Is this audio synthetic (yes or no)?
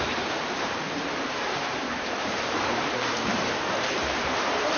yes